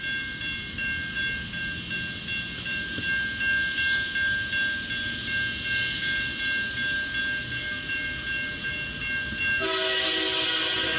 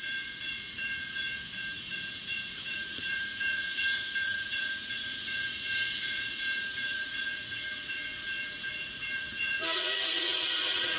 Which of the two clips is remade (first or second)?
second